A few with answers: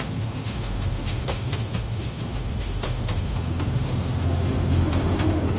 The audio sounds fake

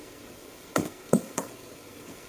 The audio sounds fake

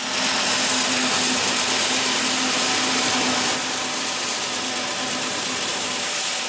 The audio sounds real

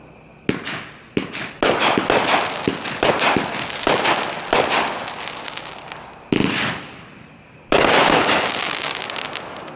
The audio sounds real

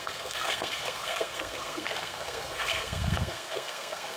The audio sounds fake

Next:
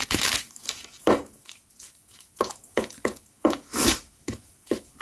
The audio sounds fake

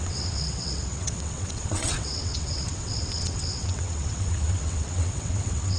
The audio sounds fake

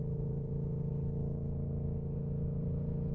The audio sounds fake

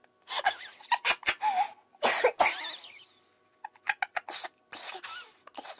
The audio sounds real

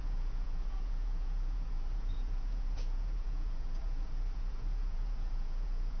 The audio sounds fake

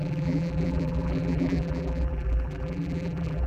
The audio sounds fake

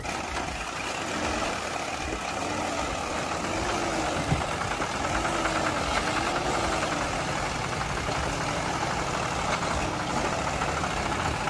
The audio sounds real